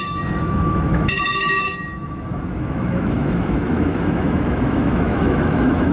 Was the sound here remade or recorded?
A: remade